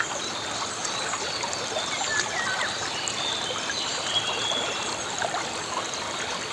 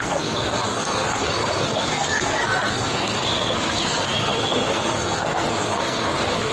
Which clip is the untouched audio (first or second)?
first